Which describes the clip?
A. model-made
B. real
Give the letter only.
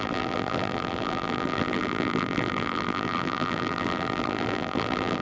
A